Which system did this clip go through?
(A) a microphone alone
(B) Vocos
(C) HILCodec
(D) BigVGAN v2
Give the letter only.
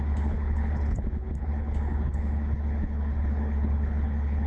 C